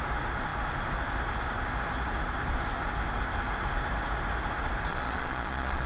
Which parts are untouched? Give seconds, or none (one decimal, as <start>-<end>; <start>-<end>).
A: 0.0-4.9